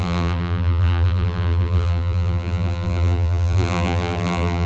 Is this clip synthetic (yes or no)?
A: yes